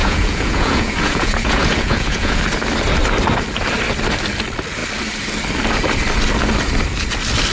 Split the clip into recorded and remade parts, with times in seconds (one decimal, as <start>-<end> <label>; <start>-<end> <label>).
0.0-2.4 remade; 2.4-7.5 recorded